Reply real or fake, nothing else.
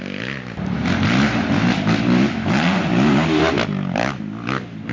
real